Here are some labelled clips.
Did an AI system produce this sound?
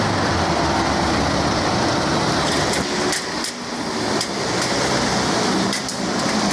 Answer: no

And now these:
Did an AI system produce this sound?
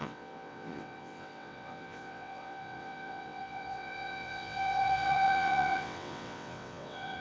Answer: yes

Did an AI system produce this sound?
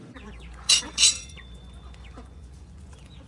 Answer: yes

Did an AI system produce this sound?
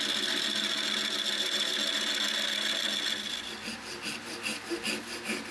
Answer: no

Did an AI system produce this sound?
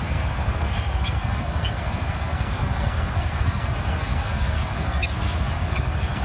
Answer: yes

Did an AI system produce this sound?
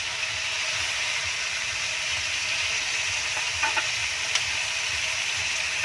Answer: no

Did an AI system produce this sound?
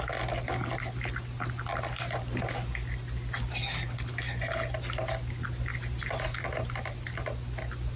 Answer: no